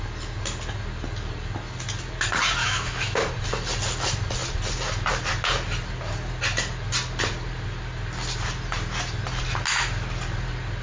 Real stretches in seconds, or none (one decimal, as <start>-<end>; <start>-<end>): 0.0-2.6; 3.3-10.8